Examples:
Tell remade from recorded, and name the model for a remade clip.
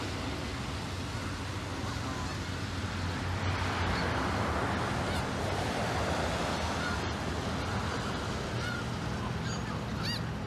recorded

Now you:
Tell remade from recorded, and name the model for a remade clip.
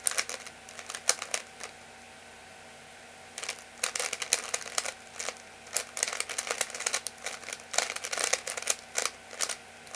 recorded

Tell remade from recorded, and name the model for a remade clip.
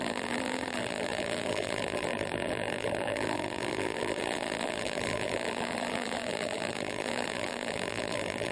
remade, vocoder, BigVGAN v2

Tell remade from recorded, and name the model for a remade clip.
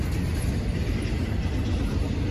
recorded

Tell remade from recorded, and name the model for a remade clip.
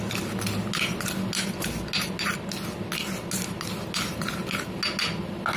recorded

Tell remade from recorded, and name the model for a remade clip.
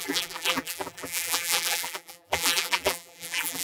remade, vocoder, BigVGAN v2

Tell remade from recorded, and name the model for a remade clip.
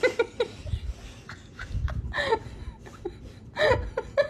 recorded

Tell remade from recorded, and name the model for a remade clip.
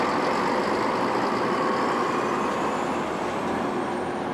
recorded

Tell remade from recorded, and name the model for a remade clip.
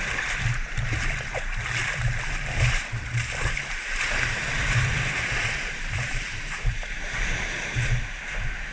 remade, vocoder, BigVGAN v2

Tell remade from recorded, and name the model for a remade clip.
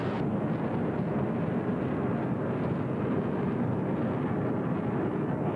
recorded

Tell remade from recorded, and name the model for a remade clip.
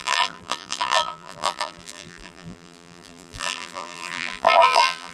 remade, vocoder, BigVGAN v2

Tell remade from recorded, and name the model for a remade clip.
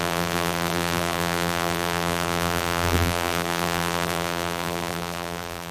remade, vocoder, BigVGAN v2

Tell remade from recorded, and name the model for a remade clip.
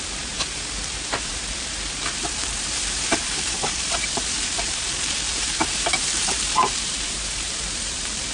remade, vocoder, BigVGAN v2